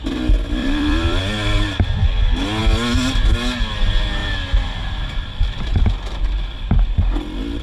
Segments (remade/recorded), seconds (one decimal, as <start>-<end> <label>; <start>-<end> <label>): 0.0-0.6 recorded; 0.6-1.2 remade; 1.2-4.2 recorded; 4.2-6.1 remade; 6.1-7.6 recorded